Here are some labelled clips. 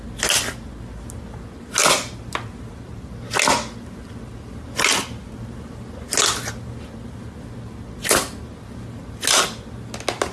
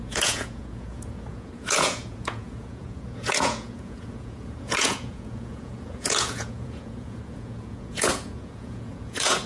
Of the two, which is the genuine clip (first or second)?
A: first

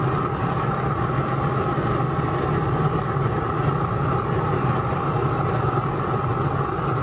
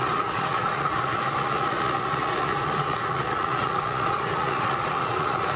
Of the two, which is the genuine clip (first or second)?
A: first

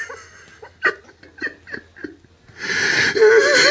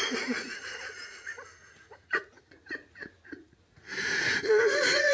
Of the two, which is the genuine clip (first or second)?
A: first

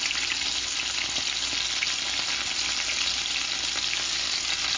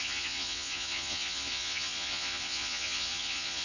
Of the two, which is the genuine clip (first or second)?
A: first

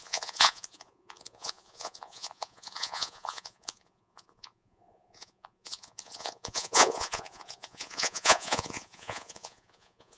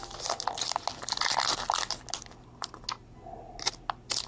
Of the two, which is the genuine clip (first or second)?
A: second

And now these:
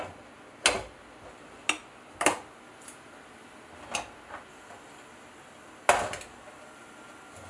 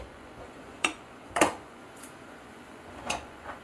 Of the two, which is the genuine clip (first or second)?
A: first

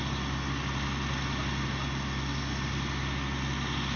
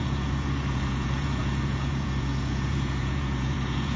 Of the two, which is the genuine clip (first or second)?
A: first